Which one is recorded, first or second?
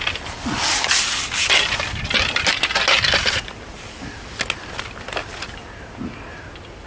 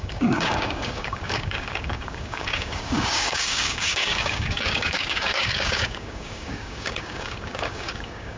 first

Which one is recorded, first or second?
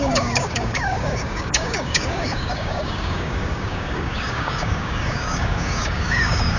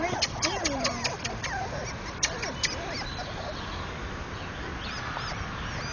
second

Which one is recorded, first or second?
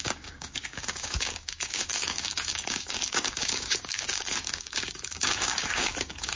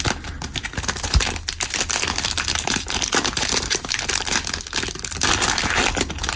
second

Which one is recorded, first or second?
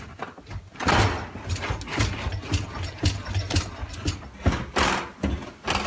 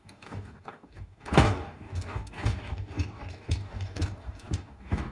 first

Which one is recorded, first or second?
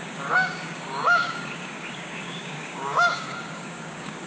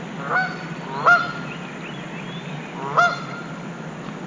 second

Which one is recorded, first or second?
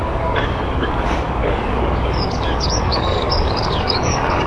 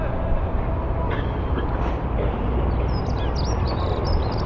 second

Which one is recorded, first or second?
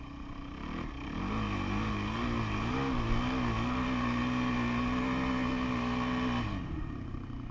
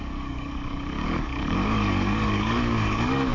first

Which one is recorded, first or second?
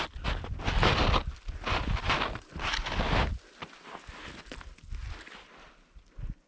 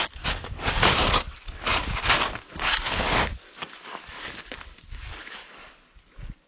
first